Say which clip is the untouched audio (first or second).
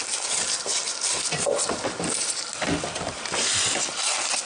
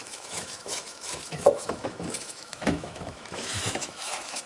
first